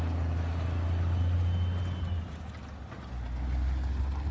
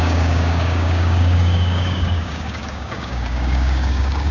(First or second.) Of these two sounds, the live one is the first